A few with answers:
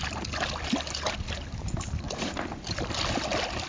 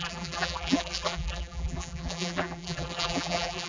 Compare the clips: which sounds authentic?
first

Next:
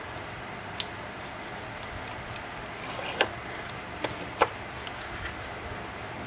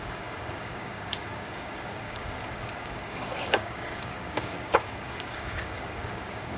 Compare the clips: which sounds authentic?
first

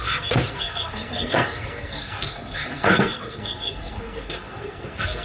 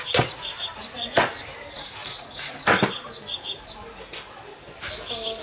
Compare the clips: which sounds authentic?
second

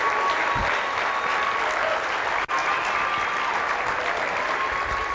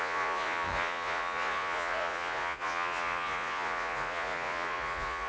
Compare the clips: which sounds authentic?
first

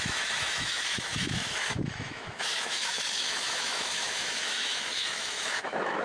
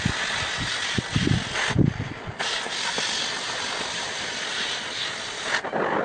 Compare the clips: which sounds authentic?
second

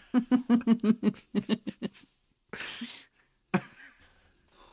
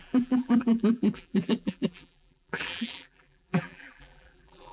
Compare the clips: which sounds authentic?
first